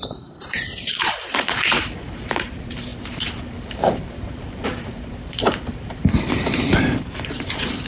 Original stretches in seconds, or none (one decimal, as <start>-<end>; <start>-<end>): none